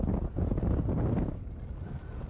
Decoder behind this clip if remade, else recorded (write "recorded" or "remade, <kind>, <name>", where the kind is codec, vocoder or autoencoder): recorded